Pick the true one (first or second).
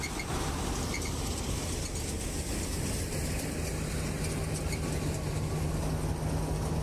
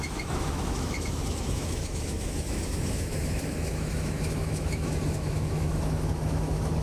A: first